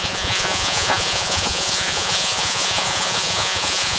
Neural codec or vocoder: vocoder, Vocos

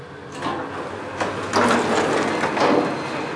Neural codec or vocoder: none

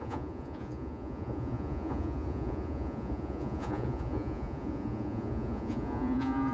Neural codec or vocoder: vocoder, Vocos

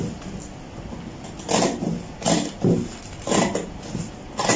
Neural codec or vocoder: none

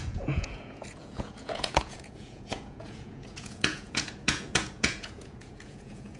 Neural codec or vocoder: vocoder, Vocos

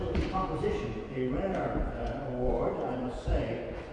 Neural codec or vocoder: vocoder, Vocos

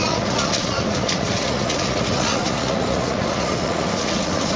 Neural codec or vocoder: vocoder, Vocos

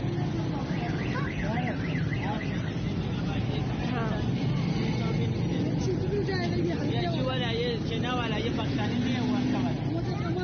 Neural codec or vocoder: none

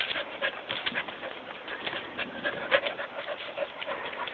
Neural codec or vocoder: none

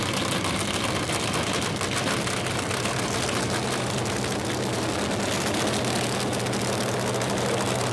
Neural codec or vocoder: none